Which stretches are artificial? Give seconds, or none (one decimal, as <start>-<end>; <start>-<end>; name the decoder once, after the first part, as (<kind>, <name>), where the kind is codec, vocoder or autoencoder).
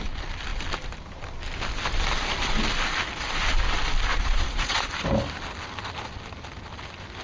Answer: 4.1-4.9 (vocoder, Vocos)